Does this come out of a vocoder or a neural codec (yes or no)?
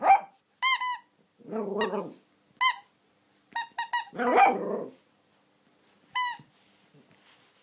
no